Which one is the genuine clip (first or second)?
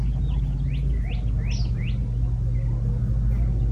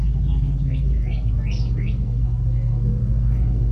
first